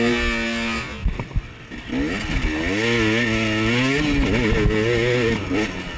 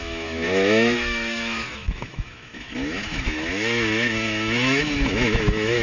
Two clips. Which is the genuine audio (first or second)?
first